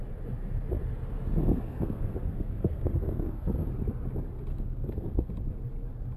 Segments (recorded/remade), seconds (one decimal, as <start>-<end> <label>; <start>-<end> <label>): 0.0-1.5 recorded; 1.5-3.7 remade; 3.7-4.5 recorded; 4.5-5.3 remade; 5.3-6.2 recorded